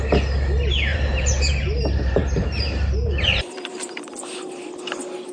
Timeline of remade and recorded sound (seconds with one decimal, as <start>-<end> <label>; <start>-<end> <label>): 0.0-0.9 recorded; 0.9-4.1 remade; 4.1-5.3 recorded